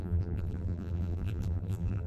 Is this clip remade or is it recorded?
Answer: remade